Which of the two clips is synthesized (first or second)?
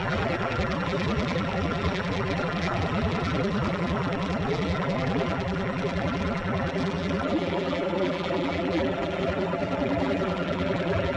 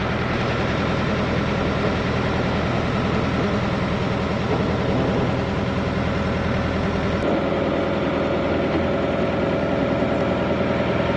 first